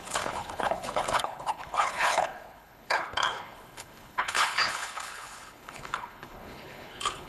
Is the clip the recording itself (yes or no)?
no